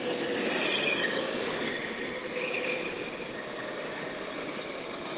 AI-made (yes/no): no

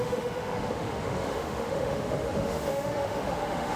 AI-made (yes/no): yes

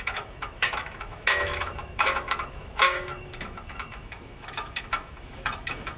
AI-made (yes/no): yes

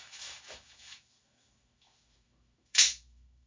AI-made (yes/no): yes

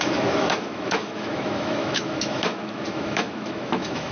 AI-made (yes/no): yes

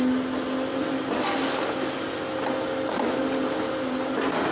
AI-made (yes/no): no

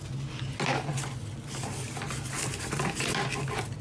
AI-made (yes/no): no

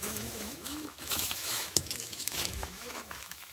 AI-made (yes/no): yes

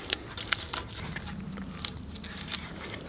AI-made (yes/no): no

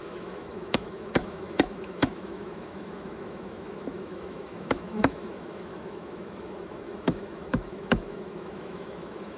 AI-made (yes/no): yes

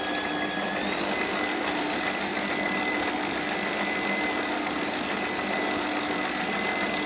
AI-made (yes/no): no